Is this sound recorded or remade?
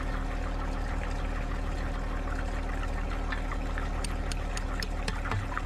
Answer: recorded